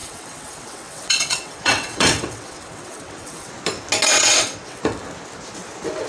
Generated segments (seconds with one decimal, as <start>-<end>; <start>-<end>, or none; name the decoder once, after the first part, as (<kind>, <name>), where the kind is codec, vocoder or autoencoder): 0.0-3.5 (vocoder, WaveNeXt); 4.1-4.8